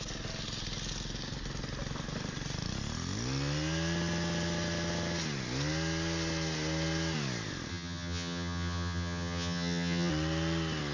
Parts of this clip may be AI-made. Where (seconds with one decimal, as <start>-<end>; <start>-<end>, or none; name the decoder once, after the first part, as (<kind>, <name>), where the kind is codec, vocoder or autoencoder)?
7.7-10.1 (vocoder, HiFi-GAN)